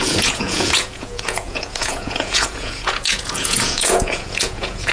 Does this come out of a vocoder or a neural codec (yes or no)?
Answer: yes